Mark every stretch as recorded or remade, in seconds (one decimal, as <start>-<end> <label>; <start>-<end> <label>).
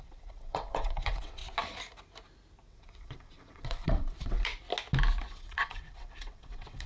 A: 0.0-1.4 remade; 1.4-2.7 recorded; 2.7-4.5 remade; 4.5-5.3 recorded; 5.3-6.9 remade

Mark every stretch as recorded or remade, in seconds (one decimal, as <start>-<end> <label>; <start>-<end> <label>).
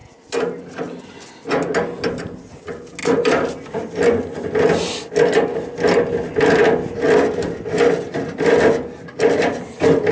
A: 0.0-10.1 recorded